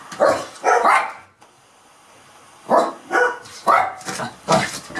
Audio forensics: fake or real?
real